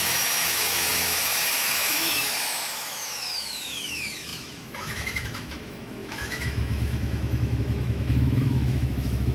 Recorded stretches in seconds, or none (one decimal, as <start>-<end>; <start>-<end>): none